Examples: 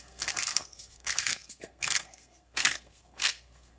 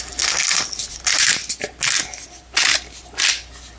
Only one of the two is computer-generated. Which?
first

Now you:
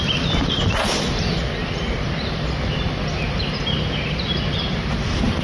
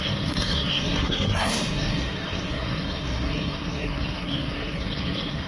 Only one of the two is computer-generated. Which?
second